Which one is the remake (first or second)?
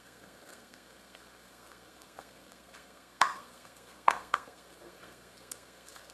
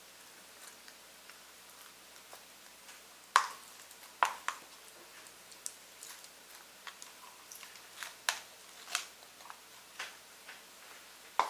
first